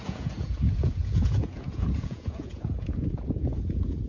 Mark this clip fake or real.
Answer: fake